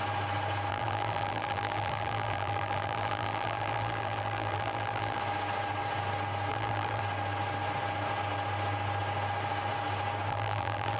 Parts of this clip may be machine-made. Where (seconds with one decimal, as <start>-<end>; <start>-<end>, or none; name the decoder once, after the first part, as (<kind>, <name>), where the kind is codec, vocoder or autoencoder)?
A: 0.7-5.2 (vocoder, BigVGAN v2); 6.5-7.0; 10.3-11.0